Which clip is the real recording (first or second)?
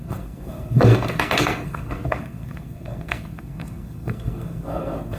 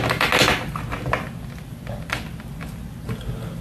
second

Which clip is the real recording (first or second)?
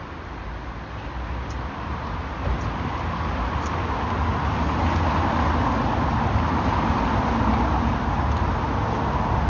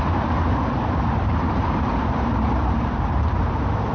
first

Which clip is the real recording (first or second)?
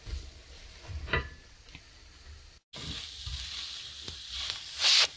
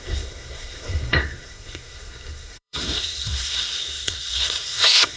first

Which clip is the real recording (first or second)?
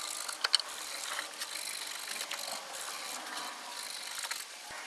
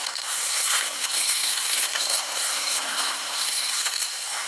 first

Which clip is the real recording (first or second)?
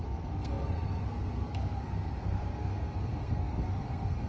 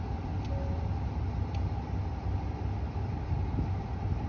second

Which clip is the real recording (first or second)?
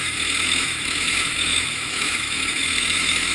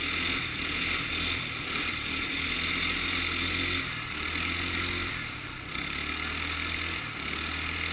second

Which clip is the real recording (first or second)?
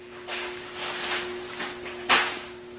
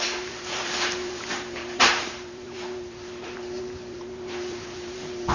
first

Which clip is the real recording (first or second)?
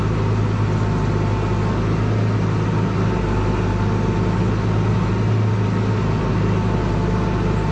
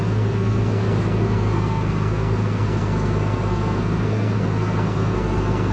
first